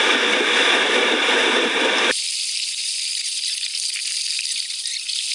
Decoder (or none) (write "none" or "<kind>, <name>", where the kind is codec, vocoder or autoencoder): none